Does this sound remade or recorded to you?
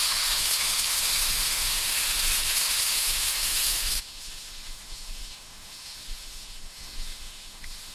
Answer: remade